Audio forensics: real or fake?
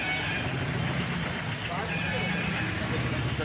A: real